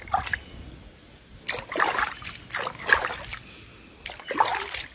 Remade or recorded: recorded